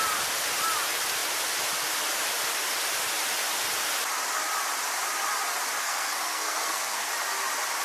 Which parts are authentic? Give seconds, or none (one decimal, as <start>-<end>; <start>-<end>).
0.0-5.8; 7.1-7.8